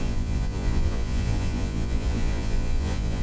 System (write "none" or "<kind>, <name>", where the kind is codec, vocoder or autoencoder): vocoder, Vocos